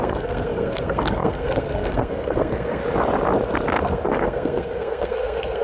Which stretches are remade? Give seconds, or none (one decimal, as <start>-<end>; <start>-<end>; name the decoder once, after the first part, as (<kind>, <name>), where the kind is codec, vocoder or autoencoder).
0.0-2.8 (codec, SNAC); 3.8-5.6